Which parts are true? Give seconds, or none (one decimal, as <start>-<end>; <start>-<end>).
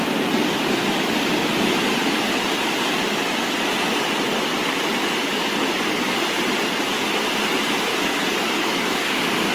0.0-7.9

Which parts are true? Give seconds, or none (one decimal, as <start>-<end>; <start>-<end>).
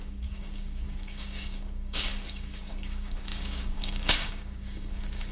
none